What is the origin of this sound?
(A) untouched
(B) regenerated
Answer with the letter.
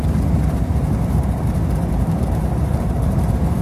B